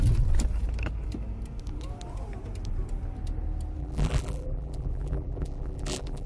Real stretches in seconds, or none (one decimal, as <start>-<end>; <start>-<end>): 0.0-3.8